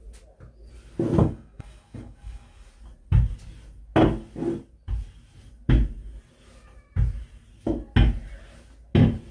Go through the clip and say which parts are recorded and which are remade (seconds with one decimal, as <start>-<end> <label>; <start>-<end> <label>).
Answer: 0.0-1.2 recorded; 1.2-2.7 remade; 2.7-9.3 recorded